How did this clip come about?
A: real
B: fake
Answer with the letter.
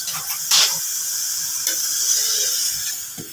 A